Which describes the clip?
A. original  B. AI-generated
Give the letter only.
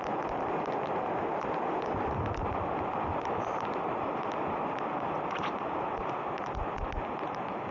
A